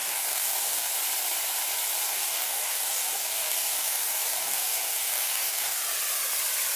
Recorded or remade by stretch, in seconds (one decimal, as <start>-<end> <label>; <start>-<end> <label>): 0.0-0.9 remade; 0.9-2.1 recorded; 2.1-5.8 remade; 5.8-6.8 recorded